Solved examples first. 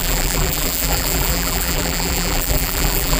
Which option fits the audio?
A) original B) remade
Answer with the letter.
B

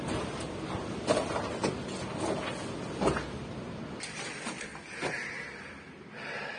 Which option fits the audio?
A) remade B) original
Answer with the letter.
B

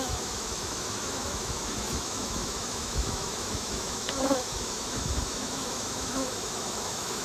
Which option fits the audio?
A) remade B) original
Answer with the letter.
A